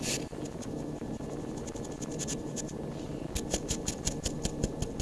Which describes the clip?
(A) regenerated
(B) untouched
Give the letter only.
B